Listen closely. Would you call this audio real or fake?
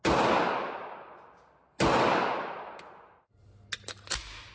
real